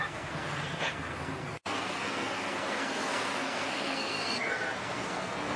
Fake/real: fake